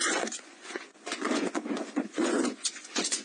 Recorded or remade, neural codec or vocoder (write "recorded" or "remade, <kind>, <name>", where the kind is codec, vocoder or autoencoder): remade, vocoder, Vocos